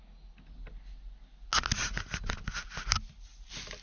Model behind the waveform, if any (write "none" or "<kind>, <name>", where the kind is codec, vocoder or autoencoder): none